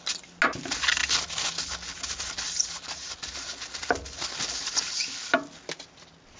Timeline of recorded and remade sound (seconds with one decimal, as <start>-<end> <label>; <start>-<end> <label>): 0.0-6.4 recorded